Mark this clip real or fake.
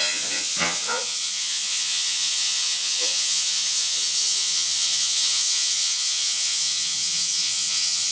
fake